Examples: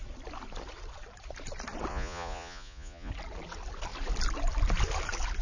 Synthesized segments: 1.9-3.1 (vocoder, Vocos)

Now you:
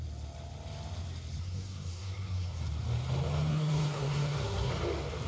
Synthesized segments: 1.4-2.6 (codec, SNAC); 3.5-4.7

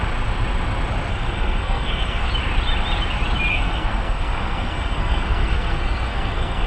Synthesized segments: 1.1-2.3 (codec, SNAC); 3.5-6.7

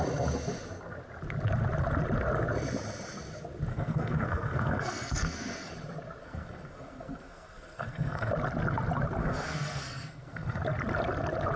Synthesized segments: 3.7-5.7 (codec, SNAC); 6.2-8.3; 9.2-10.6

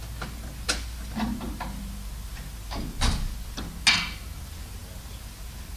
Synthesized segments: none

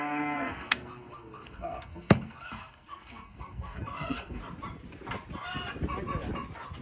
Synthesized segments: 0.0-4.4 (codec, SNAC)